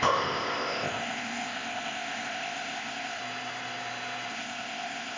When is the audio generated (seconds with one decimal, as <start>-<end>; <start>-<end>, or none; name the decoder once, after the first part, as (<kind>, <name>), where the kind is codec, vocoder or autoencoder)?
0.0-3.2 (codec, ZipCodec); 4.3-5.2